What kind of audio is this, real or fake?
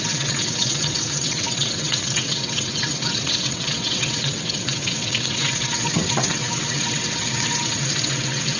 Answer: fake